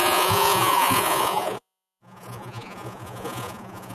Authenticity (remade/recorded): remade